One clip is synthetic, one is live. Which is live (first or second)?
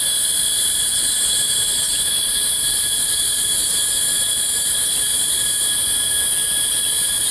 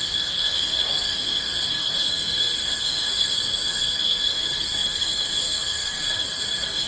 first